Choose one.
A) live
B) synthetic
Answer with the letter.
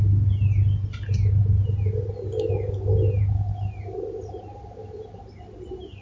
A